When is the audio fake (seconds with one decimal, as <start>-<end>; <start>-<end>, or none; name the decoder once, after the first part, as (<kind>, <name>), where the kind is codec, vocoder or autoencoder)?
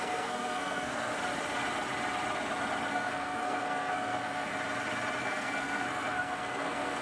0.0-1.1 (codec, SNAC); 2.9-4.5; 5.2-7.0